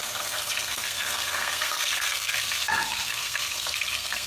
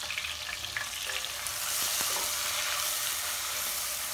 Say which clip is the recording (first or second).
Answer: second